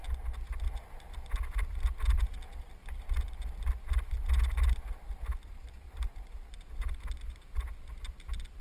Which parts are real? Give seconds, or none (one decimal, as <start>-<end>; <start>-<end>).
0.0-5.3; 6.6-8.6